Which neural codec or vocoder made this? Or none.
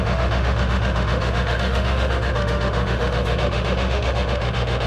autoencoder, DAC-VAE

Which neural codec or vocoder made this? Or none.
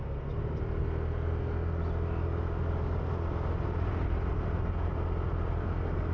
none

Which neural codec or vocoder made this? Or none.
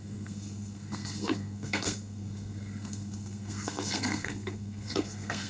codec, SNAC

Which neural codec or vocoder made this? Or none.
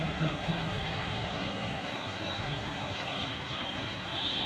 codec, SNAC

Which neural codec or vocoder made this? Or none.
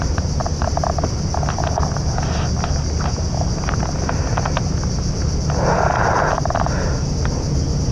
none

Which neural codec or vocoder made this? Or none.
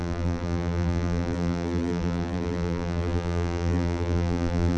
vocoder, BigVGAN v2